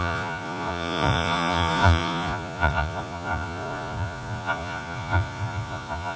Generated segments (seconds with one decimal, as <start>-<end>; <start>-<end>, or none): 0.0-6.2